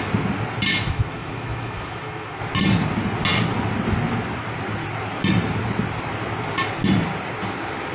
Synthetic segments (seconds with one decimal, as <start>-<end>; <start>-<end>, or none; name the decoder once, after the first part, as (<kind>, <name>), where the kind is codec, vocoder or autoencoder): 0.7-2.4 (autoencoder, DAC-VAE)